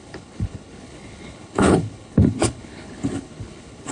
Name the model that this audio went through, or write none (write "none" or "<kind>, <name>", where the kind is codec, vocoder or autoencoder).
codec, HILCodec